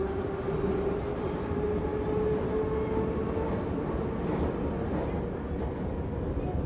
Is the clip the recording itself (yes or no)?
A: yes